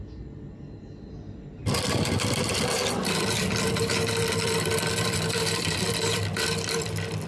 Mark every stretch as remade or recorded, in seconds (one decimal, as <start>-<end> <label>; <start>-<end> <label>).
0.0-1.6 recorded; 1.6-2.5 remade; 2.5-3.0 recorded; 3.0-7.3 remade